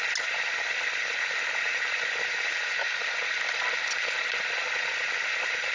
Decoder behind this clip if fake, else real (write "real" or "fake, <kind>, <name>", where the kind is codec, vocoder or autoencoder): real